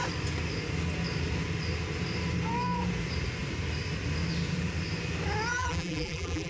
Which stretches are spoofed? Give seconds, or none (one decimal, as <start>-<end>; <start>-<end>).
5.5-6.5